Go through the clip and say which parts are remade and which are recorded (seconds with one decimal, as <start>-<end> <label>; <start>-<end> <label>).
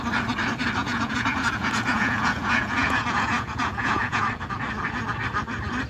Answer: 0.0-0.8 recorded; 0.8-4.3 remade; 4.3-5.9 recorded